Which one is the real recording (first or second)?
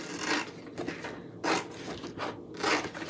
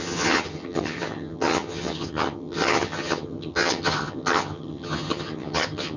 first